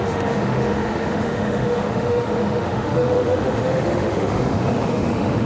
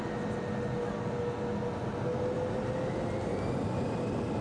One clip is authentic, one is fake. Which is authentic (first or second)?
second